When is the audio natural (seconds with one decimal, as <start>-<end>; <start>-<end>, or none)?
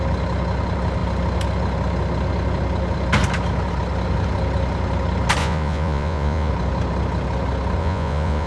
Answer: 0.0-5.4; 6.5-7.8